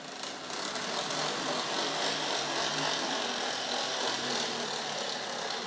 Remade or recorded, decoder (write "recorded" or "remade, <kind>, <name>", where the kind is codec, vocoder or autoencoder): recorded